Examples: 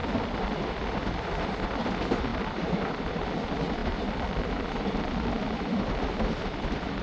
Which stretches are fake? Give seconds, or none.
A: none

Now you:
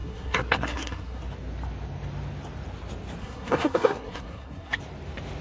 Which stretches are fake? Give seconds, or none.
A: 0.0-1.2; 3.2-4.8

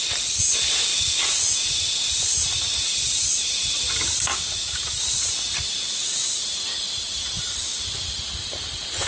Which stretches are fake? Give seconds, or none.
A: 4.3-5.0

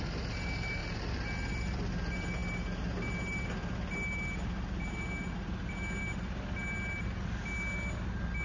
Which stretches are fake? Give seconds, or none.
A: none

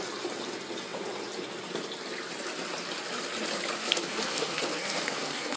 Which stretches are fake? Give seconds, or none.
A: 3.8-5.6

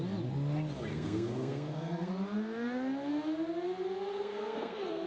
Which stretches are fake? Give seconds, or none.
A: 0.9-2.1; 4.1-5.1

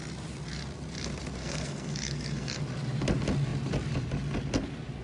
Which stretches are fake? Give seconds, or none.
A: 1.4-2.6